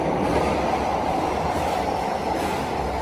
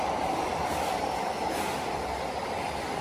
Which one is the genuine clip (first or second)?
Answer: first